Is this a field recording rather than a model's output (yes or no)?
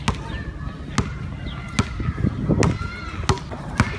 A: yes